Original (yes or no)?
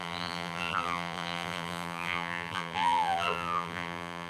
no